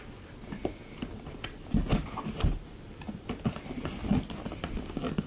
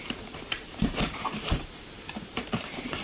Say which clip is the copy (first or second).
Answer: second